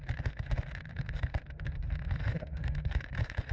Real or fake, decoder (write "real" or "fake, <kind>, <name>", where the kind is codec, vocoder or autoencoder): fake, autoencoder, DAC-VAE